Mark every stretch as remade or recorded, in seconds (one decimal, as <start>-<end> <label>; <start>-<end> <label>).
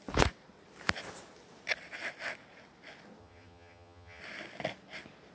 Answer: 0.0-3.2 recorded; 3.2-4.2 remade; 4.2-5.3 recorded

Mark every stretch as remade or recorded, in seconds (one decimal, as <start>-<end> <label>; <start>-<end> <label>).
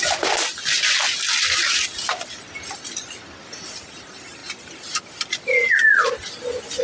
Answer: 0.0-6.8 recorded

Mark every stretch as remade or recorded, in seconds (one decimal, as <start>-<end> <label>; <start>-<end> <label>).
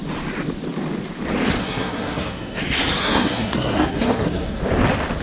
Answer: 0.0-1.6 recorded; 1.6-2.6 remade; 2.6-3.0 recorded; 3.0-4.6 remade; 4.6-5.2 recorded